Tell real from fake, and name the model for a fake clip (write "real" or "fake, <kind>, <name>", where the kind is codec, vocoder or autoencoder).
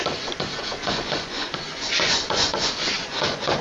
fake, vocoder, Vocos